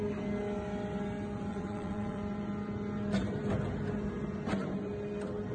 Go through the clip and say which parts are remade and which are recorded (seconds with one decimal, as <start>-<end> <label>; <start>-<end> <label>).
0.0-1.5 recorded; 1.5-2.2 remade; 2.2-5.5 recorded